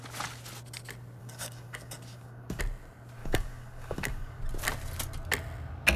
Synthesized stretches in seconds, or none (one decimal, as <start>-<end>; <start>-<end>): 1.2-2.6; 3.2-4.4